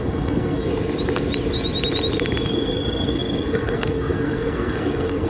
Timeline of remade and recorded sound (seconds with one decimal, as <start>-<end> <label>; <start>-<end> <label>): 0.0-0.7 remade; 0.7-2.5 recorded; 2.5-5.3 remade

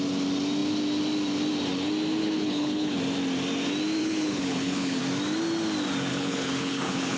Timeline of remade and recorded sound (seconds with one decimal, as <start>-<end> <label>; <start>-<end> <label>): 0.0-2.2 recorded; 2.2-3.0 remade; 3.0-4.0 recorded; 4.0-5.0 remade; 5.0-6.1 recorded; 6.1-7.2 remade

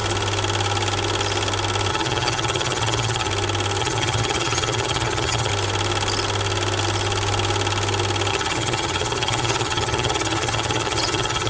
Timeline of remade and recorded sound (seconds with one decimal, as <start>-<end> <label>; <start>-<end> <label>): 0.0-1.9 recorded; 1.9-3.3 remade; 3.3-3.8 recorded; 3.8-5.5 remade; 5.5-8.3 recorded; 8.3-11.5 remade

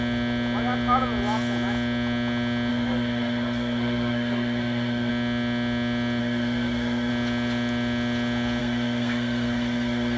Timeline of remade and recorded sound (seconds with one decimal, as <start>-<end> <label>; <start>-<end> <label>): 0.0-2.7 recorded; 2.7-5.1 remade; 5.1-6.2 recorded; 6.2-7.1 remade; 7.1-8.6 recorded; 8.6-10.2 remade